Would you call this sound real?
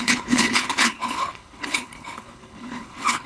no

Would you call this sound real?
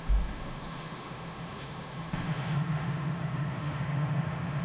no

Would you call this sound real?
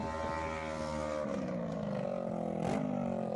yes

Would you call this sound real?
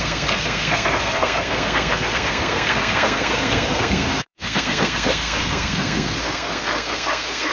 no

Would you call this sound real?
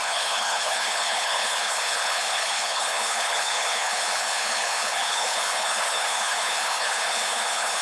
no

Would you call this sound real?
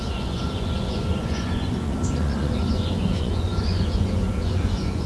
no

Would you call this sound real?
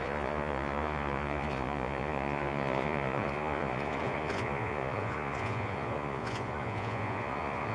no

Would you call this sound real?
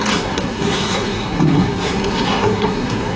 no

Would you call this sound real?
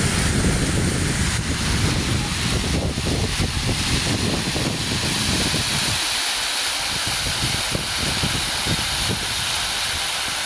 yes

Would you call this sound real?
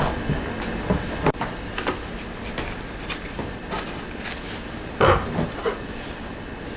yes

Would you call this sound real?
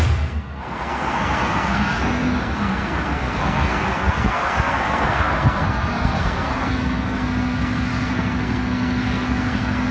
no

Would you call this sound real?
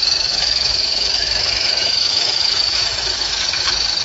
no